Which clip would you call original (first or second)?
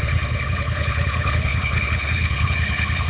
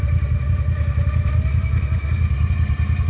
second